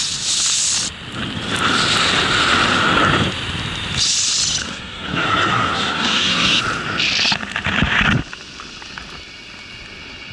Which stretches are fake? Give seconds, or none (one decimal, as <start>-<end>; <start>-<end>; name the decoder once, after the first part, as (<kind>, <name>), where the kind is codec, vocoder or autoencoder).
4.6-6.6 (codec, SNAC)